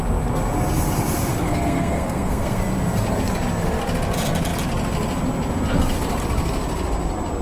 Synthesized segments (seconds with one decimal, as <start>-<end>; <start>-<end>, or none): 1.3-2.6